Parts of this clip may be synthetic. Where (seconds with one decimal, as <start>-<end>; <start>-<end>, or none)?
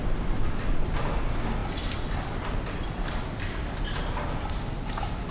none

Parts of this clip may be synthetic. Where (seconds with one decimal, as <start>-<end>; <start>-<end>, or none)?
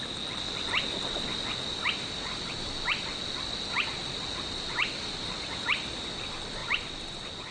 none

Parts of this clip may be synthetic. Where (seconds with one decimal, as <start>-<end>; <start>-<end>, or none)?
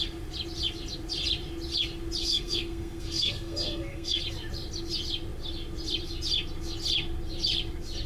2.2-4.2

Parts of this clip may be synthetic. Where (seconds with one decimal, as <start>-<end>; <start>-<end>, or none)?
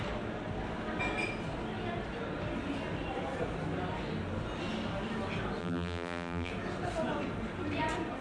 5.6-6.5